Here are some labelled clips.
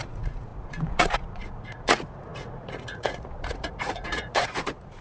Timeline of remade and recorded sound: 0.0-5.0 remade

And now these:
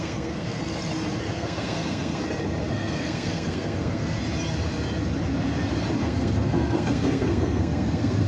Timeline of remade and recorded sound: 0.0-0.6 remade; 0.6-1.2 recorded; 1.2-2.2 remade; 2.2-2.7 recorded; 2.7-4.2 remade; 4.2-6.0 recorded; 6.0-8.3 remade

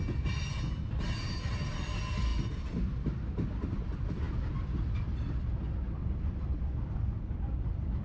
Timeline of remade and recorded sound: 0.0-8.0 recorded

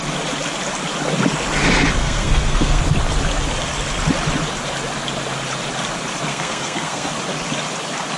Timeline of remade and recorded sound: 0.0-2.0 recorded; 2.0-2.8 remade; 2.8-6.3 recorded; 6.3-7.1 remade; 7.1-8.2 recorded

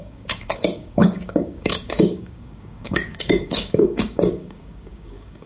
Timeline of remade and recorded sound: 0.0-5.5 remade